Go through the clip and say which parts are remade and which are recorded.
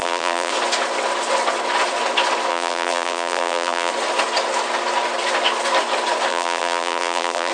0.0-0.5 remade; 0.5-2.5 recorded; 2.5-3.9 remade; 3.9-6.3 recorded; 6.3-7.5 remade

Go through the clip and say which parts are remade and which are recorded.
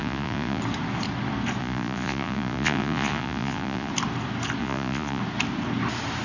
0.0-0.6 remade; 0.6-1.6 recorded; 1.6-3.9 remade; 3.9-4.6 recorded; 4.6-5.2 remade; 5.2-6.2 recorded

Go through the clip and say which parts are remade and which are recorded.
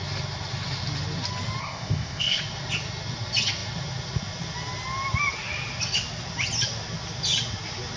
0.0-1.6 recorded; 1.6-2.4 remade; 2.4-8.0 recorded